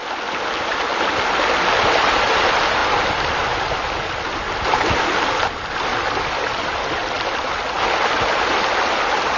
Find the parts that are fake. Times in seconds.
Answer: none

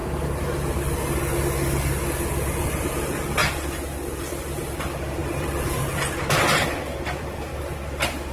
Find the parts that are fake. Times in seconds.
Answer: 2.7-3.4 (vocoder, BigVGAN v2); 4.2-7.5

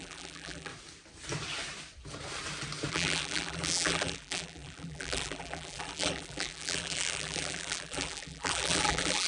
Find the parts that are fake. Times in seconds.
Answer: 0.0-0.7 (vocoder, BigVGAN v2); 2.9-9.3

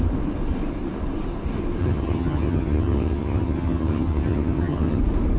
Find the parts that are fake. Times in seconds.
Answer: 1.8-5.0 (vocoder, HiFi-GAN)

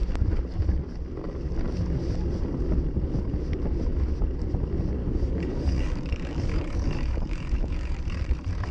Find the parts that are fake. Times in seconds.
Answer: 5.0-8.0 (codec, DAC)